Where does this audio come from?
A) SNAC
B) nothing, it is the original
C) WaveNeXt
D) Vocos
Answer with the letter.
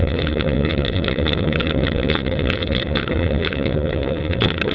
C